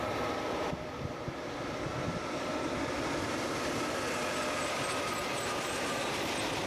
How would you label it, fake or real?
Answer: real